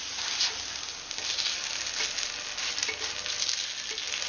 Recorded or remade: recorded